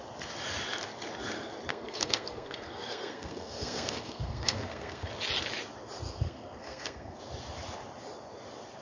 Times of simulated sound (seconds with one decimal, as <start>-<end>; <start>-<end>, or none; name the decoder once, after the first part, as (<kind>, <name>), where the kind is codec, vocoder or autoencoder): 1.7-5.1 (codec, SNAC); 6.1-7.2